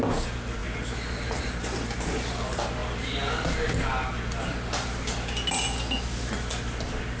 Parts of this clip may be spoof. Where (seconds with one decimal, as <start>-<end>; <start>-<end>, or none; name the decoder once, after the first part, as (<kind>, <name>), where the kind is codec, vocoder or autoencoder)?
none